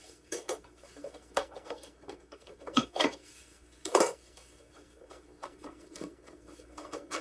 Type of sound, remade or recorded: remade